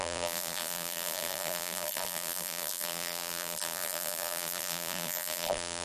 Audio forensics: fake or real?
fake